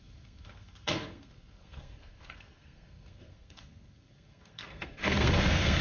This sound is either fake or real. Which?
fake